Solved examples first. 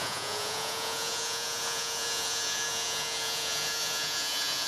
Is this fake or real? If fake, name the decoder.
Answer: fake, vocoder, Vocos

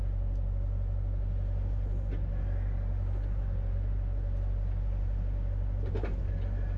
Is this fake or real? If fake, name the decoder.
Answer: real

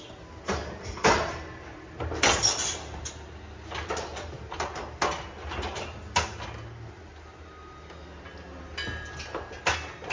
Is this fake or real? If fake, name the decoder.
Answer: real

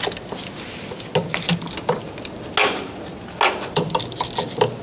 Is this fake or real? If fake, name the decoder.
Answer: real